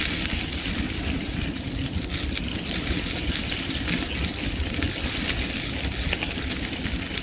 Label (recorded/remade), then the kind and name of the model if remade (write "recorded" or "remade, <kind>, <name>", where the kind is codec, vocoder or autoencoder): recorded